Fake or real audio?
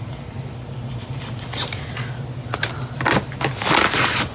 real